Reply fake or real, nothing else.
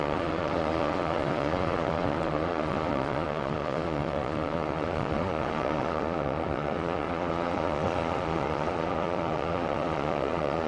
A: fake